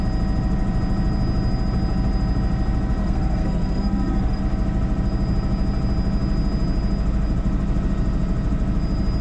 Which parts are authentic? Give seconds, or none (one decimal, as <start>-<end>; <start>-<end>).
0.0-3.0; 4.4-9.2